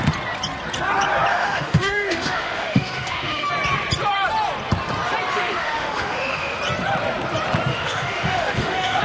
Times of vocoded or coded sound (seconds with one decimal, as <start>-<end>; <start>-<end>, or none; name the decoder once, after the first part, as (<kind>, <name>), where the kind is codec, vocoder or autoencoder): 1.3-3.5 (autoencoder, DAC-VAE); 5.3-6.6; 7.7-9.0